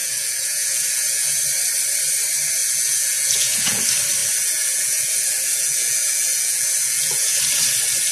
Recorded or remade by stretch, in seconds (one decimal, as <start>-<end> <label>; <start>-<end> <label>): 0.0-1.4 remade; 1.4-2.6 recorded; 2.6-3.8 remade; 3.8-4.2 recorded; 4.2-7.4 remade; 7.4-8.1 recorded